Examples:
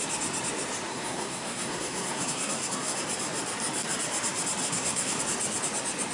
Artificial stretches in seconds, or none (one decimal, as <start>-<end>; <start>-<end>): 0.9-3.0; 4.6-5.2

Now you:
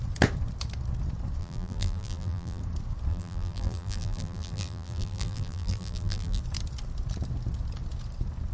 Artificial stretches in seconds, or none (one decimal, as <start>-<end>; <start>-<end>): 1.4-2.6; 3.1-6.4

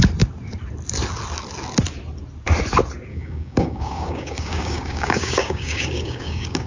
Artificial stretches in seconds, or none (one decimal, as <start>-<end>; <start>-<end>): 3.1-6.7